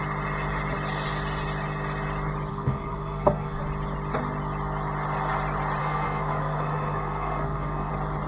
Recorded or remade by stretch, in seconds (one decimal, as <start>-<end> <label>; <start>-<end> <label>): 0.0-2.5 recorded; 2.5-3.6 remade; 3.6-5.8 recorded; 5.8-7.9 remade; 7.9-8.3 recorded